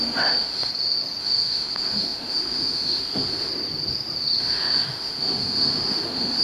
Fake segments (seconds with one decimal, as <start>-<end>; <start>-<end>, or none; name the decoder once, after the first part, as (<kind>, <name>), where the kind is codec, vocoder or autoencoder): 0.0-0.7 (autoencoder, DAC-VAE); 1.2-3.5; 4.4-6.4